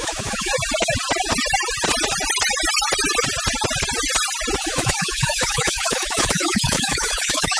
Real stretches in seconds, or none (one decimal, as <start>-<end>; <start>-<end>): 0.5-4.6